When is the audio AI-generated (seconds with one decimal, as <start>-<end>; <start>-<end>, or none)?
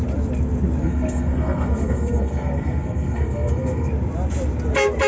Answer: 0.8-3.9